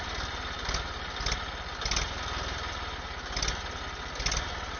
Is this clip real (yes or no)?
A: yes